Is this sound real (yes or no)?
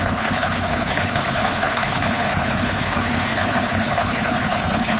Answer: no